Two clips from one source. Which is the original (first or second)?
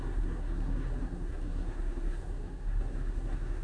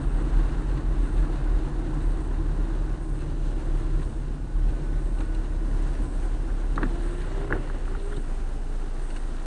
second